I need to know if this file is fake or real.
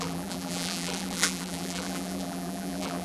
fake